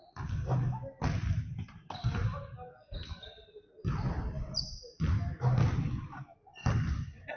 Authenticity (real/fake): real